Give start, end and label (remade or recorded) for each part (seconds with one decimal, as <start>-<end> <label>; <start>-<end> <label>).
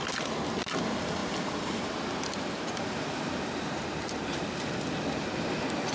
0.0-5.9 recorded